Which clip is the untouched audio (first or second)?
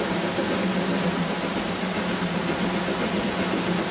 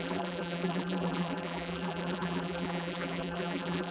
first